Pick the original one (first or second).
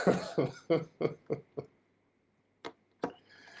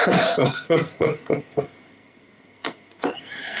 first